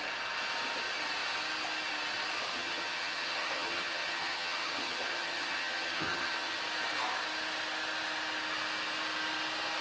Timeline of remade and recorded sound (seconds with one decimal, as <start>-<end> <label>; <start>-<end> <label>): 0.0-2.5 recorded; 2.5-6.6 remade; 6.6-9.8 recorded